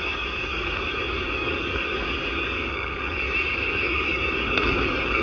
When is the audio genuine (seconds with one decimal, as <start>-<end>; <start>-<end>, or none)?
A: none